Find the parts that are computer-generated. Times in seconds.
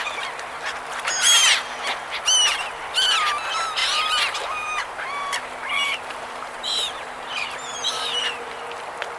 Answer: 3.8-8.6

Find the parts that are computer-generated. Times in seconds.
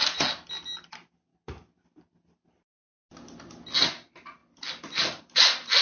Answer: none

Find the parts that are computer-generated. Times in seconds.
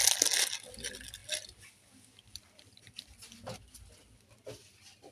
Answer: none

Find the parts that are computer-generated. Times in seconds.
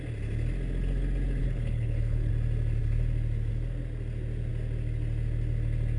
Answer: 1.4-2.3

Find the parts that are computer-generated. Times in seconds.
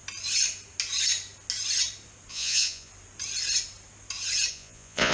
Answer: 2.3-2.9; 4.5-5.1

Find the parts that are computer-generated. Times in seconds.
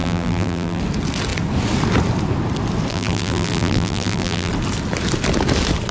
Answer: 0.0-0.8; 2.9-4.5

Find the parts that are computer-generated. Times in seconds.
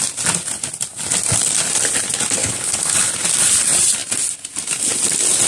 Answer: 2.4-3.1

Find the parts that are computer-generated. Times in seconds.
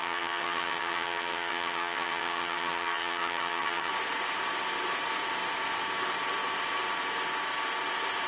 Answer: 0.0-3.9